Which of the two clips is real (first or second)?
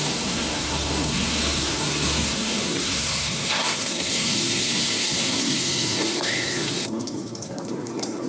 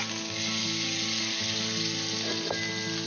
second